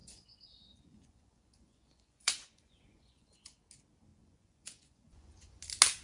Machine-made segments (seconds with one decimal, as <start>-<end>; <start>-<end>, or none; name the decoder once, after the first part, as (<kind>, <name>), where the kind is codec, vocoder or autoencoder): 0.0-3.6 (vocoder, Vocos); 4.1-5.6